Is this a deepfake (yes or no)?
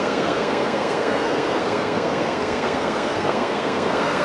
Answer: yes